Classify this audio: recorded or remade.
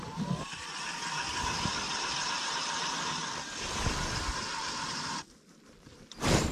remade